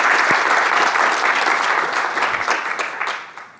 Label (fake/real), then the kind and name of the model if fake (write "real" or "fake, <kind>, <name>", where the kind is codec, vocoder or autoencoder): real